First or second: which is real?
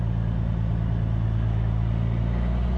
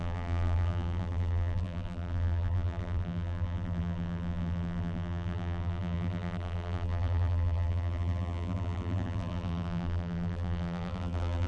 first